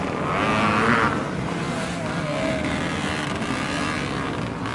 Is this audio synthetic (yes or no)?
no